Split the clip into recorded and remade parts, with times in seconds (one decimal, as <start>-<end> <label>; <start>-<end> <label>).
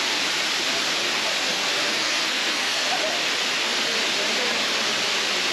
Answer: 0.0-1.4 recorded; 1.4-2.9 remade; 2.9-5.5 recorded